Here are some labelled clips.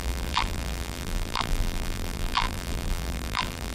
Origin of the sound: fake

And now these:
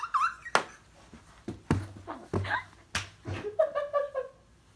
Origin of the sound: real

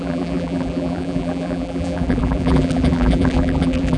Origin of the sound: fake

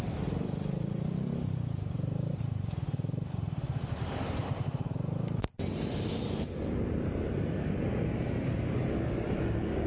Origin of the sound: fake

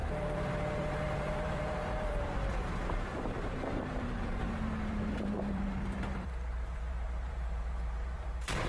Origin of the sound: fake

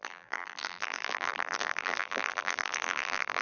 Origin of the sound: fake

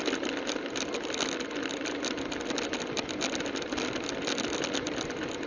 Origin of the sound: real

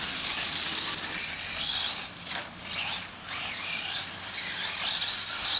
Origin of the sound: real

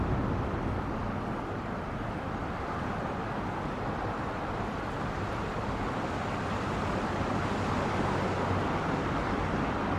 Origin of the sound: real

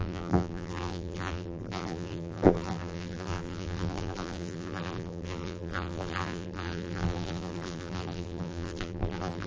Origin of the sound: fake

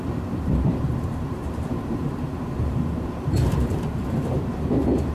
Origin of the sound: fake